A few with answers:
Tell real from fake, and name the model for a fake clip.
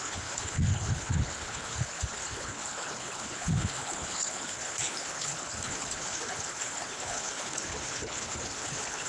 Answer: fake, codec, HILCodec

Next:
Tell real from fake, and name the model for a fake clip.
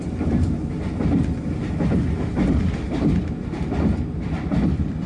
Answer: real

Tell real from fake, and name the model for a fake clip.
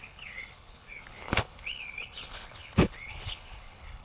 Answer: fake, codec, HILCodec